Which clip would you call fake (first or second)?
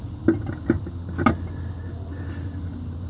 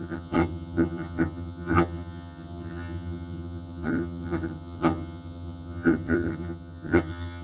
second